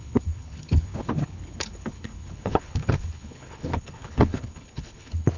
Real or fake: fake